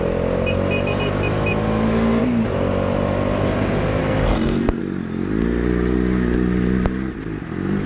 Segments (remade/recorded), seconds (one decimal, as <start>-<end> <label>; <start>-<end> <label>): 0.0-4.0 recorded; 4.0-4.8 remade; 4.8-7.9 recorded